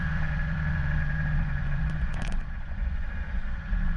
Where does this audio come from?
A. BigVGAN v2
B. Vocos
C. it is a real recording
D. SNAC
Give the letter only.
B